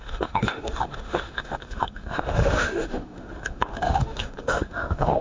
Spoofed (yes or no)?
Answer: yes